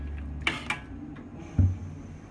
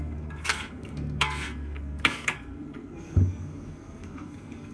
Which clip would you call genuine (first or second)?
first